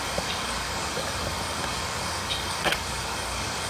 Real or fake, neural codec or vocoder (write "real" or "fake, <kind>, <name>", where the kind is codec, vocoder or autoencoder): fake, codec, DAC